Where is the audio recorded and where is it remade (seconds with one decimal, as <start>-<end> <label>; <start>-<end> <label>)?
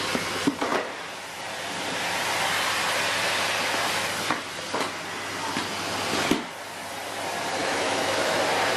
0.0-7.6 recorded; 7.6-8.4 remade; 8.4-8.8 recorded